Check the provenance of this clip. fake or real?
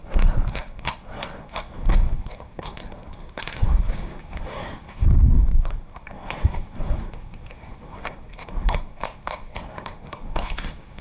fake